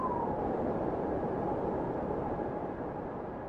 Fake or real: fake